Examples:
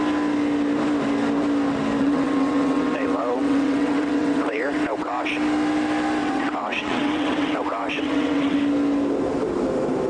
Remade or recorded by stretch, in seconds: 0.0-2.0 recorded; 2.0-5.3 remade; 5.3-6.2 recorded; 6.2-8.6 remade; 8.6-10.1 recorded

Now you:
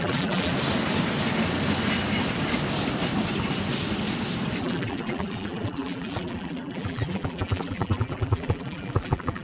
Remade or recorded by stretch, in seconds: 0.0-0.5 remade; 0.5-4.6 recorded; 4.6-9.4 remade